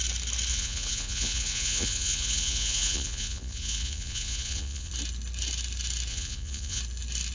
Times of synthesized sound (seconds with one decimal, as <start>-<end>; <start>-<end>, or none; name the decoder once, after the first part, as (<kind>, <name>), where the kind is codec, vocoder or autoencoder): 0.5-4.9 (vocoder, Vocos); 6.1-6.8